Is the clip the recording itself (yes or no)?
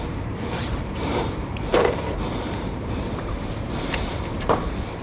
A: no